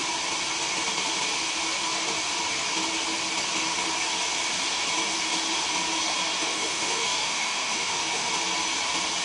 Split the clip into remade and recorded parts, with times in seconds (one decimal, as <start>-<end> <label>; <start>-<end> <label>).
0.0-6.4 recorded; 6.4-8.3 remade; 8.3-9.2 recorded